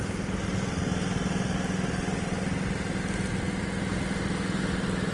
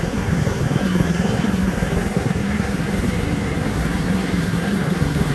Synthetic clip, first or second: second